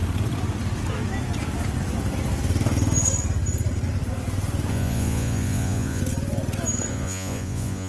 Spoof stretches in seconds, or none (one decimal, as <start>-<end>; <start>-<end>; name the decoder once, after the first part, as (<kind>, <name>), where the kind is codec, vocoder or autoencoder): 4.7-6.0 (vocoder, Vocos); 6.9-7.9